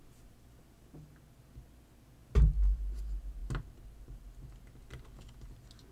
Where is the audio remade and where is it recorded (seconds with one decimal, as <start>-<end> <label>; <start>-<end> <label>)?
0.0-5.9 recorded